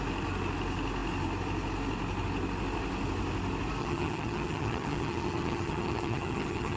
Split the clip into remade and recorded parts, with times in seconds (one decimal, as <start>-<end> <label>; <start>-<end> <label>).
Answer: 0.0-3.8 recorded; 3.8-6.8 remade